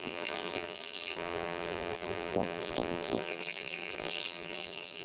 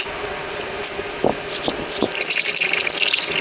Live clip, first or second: second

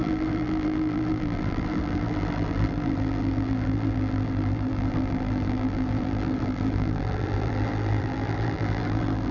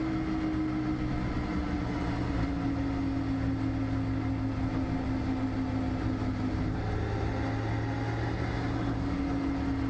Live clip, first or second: second